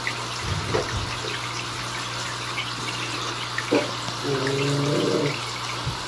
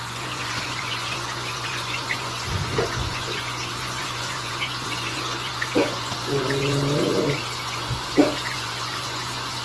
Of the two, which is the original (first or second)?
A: first